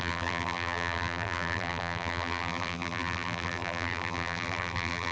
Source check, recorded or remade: remade